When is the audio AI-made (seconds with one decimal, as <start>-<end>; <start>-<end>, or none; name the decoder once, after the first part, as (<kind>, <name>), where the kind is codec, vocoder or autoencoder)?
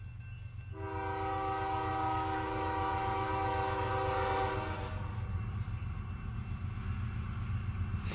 1.9-3.9 (autoencoder, DAC-VAE)